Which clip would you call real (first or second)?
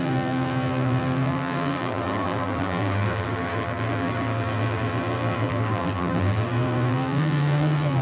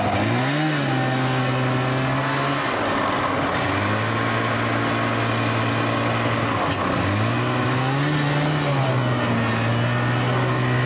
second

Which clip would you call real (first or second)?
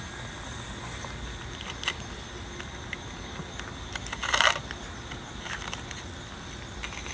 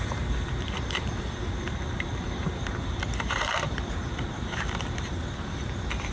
first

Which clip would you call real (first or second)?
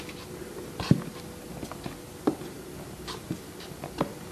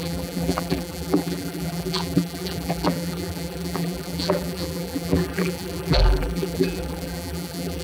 first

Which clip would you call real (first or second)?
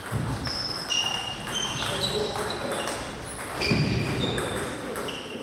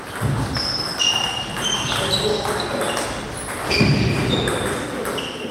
second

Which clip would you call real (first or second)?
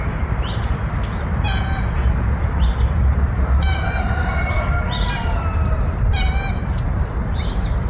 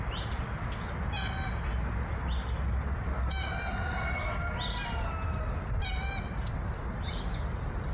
second